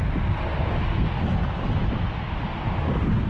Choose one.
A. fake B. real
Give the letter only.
B